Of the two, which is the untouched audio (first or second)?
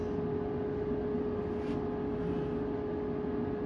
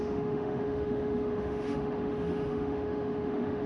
first